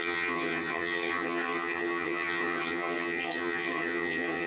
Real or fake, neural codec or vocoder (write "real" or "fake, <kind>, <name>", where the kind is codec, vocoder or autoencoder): fake, vocoder, HiFi-GAN